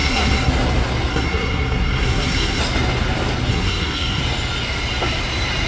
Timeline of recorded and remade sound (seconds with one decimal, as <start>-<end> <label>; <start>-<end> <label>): 0.0-0.5 remade; 0.5-1.1 recorded; 1.1-2.6 remade; 2.6-3.5 recorded; 3.5-4.2 remade; 4.2-5.7 recorded